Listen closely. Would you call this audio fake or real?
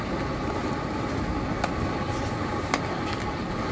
real